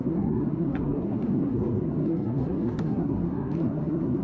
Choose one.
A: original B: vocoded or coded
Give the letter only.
B